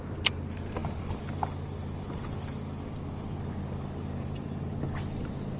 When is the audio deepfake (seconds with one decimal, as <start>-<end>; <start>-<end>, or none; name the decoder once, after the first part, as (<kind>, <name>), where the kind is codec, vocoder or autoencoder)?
none